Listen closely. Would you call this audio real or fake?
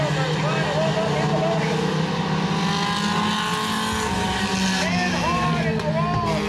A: real